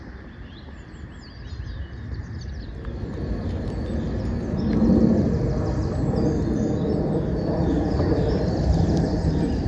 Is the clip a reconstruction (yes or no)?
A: no